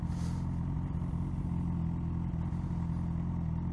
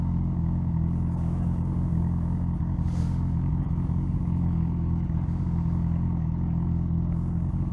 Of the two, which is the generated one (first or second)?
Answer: second